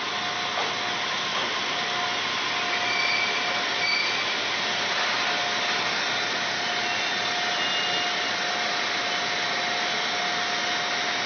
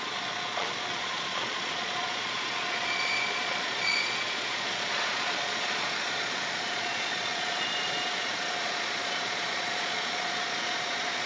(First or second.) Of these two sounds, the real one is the first